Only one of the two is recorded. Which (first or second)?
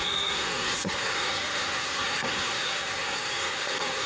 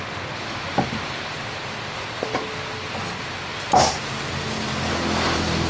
second